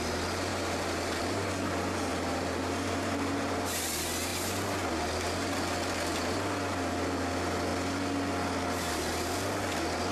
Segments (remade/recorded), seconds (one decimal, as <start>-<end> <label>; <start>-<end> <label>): 0.0-0.5 recorded; 0.5-1.5 remade; 1.5-2.1 recorded; 2.1-3.8 remade; 3.8-10.1 recorded